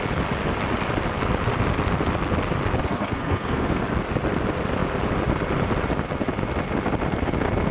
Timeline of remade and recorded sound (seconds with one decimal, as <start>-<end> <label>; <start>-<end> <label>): 0.0-2.8 recorded; 2.8-3.8 remade; 3.8-7.7 recorded